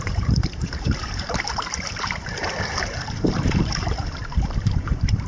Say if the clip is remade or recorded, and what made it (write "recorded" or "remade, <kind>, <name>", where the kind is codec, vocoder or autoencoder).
remade, vocoder, BigVGAN v2